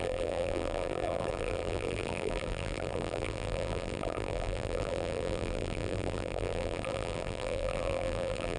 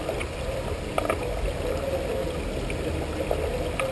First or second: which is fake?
first